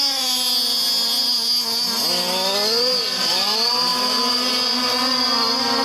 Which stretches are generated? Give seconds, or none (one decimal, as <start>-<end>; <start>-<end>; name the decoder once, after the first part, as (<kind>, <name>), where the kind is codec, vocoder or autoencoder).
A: none